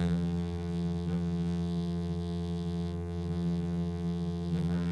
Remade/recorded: remade